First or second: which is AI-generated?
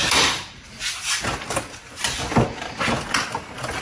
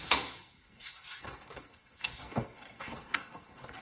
second